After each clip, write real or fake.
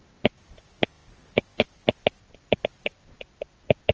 real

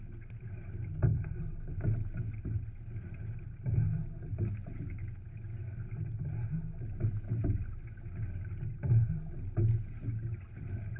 real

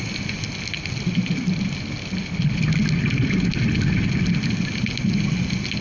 real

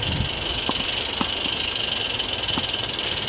real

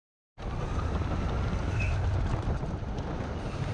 real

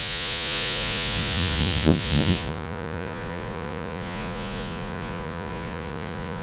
fake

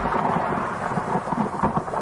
real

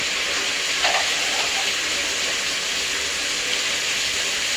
real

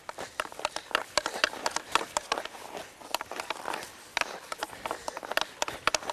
real